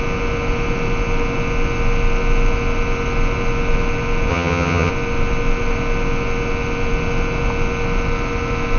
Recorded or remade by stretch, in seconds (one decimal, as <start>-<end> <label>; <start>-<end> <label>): 0.0-4.3 recorded; 4.3-4.9 remade; 4.9-8.8 recorded